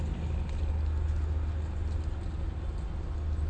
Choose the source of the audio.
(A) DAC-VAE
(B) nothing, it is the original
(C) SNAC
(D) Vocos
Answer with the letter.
B